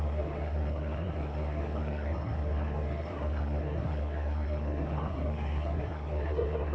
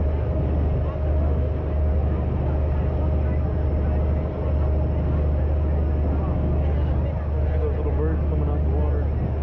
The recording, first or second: second